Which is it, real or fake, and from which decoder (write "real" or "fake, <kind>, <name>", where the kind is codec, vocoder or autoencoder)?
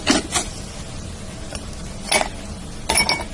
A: real